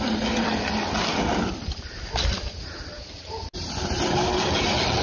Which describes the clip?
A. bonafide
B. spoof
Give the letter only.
A